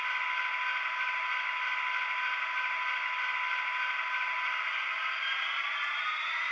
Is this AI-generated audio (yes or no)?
no